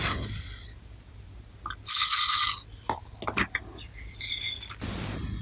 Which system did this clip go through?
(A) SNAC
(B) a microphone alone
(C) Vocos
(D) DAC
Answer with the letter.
B